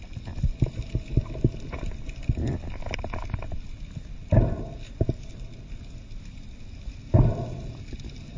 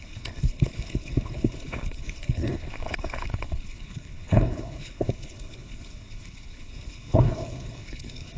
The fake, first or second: second